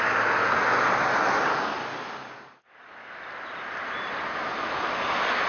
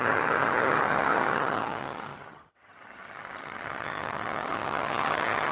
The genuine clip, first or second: first